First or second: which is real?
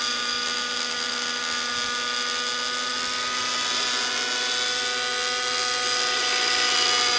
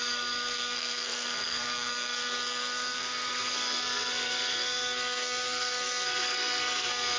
first